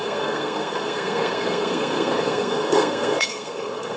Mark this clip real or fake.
fake